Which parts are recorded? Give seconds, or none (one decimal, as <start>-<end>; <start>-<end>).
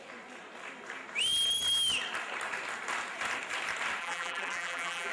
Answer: 0.0-4.0